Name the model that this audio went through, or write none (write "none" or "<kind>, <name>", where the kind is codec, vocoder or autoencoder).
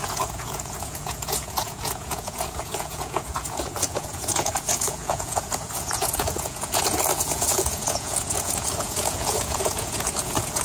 vocoder, Vocos